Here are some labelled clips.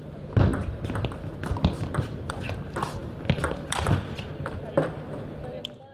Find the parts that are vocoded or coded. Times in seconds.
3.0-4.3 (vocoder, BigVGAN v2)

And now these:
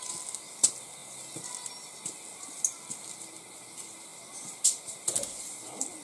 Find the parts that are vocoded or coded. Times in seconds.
none

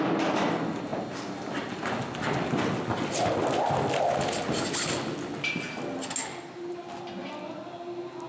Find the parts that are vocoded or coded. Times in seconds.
none

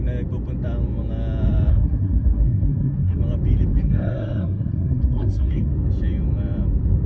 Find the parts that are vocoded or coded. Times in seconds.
1.7-3.2 (codec, SNAC); 3.7-5.7

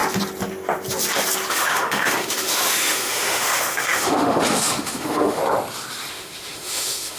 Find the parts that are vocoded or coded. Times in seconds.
1.5-5.4 (autoencoder, DAC-VAE); 6.1-7.2

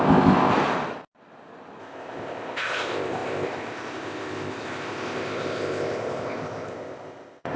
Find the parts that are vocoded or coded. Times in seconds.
0.0-0.5 (codec, ZipCodec); 1.8-7.6